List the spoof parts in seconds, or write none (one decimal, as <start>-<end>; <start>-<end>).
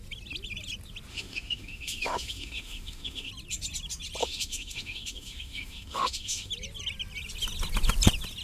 1.1-3.3; 4.2-6.5